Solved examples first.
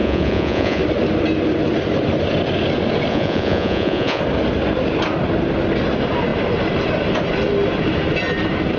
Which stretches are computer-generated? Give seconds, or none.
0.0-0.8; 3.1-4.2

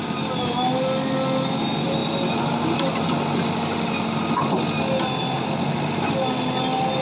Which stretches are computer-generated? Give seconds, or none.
none

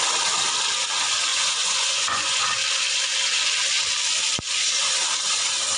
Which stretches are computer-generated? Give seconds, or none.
1.3-2.4

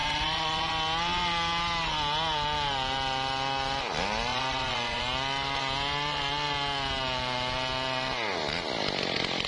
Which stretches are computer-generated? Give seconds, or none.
0.0-0.7; 4.3-5.0